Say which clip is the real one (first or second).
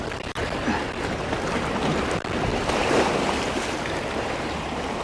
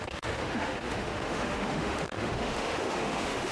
first